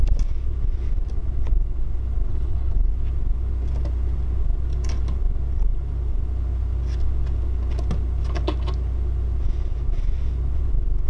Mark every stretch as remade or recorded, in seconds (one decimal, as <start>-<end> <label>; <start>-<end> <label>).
0.0-2.3 recorded; 2.3-2.9 remade; 2.9-11.1 recorded